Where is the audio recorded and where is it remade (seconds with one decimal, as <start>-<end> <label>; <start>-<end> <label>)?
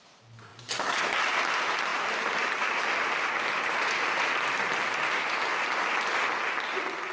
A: 0.0-1.9 recorded; 1.9-3.6 remade; 3.6-5.5 recorded; 5.5-6.4 remade; 6.4-7.1 recorded